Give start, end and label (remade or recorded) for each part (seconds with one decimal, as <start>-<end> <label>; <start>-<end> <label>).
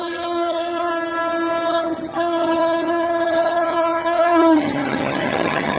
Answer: 0.0-0.9 remade; 0.9-1.7 recorded; 1.7-5.8 remade